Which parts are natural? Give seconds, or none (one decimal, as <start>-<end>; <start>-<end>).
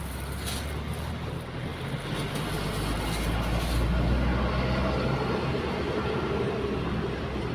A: 0.0-7.5